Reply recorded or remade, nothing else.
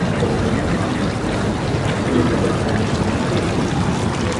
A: recorded